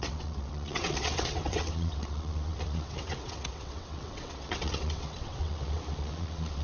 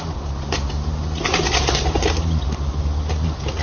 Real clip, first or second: second